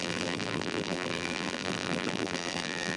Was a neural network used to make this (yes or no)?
yes